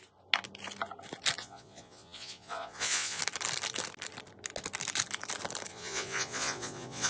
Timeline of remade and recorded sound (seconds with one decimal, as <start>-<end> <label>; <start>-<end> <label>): 0.0-1.4 recorded; 1.4-3.2 remade; 3.2-5.7 recorded; 5.7-7.1 remade